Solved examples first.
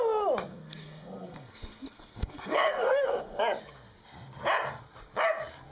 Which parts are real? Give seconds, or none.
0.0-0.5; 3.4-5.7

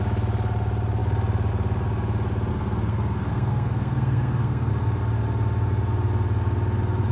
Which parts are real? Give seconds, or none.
0.0-2.5; 4.7-7.1